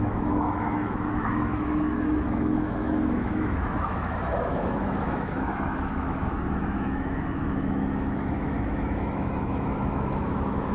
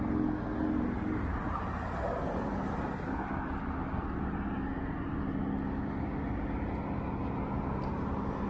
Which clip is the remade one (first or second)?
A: first